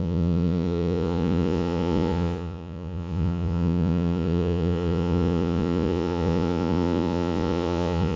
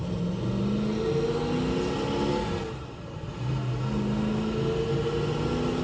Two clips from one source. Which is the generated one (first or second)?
first